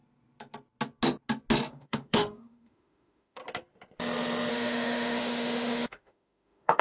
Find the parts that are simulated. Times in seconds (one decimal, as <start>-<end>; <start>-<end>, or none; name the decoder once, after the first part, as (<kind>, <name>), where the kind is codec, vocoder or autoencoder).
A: 1.7-3.4 (autoencoder, DAC-VAE); 4.5-6.8